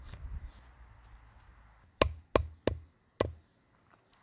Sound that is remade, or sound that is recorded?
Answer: recorded